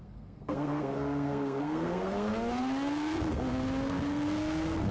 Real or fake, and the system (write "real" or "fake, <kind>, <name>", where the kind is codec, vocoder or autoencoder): fake, codec, SNAC